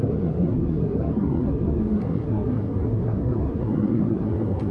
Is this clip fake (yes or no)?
yes